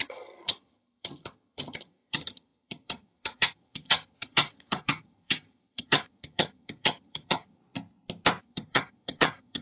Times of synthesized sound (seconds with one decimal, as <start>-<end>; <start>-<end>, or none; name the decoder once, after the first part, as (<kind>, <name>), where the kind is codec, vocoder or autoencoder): 0.0-7.6 (vocoder, HiFi-GAN); 8.4-9.6

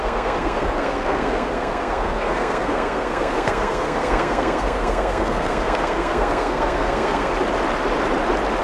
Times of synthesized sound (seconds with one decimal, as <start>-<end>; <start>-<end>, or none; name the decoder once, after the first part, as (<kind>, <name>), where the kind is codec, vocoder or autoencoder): 0.0-7.3 (codec, SNAC)

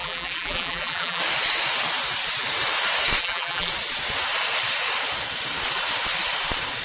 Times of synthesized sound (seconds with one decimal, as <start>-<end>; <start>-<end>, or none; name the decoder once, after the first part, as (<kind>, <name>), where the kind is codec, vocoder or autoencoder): 0.0-1.2 (vocoder, BigVGAN v2); 3.2-3.7

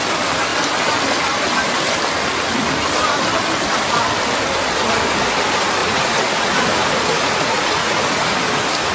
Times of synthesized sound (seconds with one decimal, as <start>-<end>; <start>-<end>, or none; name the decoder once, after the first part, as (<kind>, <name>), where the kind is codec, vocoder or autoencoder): 5.8-6.5 (vocoder, Vocos); 7.1-8.2

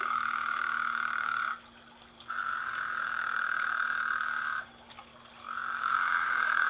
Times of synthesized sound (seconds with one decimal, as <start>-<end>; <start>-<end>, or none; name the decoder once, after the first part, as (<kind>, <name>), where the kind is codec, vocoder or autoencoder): 0.0-1.4 (codec, DAC); 2.6-5.1; 5.7-6.7

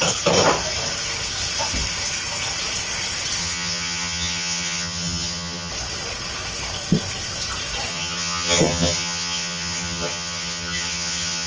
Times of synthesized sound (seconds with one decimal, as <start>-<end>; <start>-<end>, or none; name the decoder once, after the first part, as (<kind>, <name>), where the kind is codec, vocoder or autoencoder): 3.4-5.7 (vocoder, HiFi-GAN); 7.9-11.5

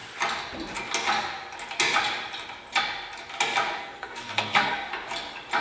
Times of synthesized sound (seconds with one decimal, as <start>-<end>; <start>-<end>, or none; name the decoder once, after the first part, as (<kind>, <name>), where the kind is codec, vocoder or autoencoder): 3.8-4.9 (codec, SNAC)